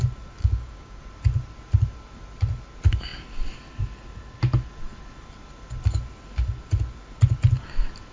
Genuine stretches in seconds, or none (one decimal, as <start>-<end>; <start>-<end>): 0.0-0.4; 1.0-8.1